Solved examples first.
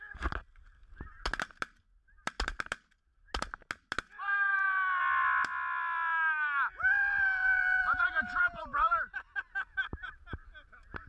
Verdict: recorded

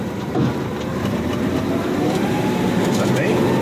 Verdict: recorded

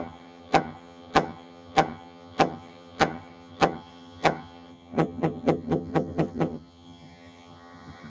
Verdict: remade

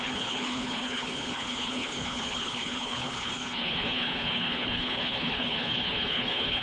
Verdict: remade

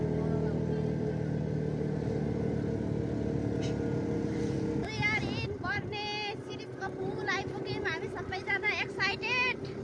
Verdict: recorded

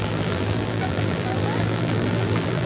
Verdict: remade